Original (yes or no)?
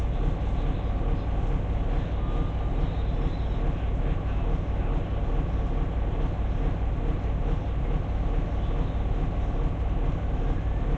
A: yes